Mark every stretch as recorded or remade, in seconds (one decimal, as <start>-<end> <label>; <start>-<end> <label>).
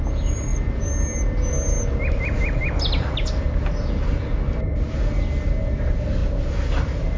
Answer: 0.0-7.2 recorded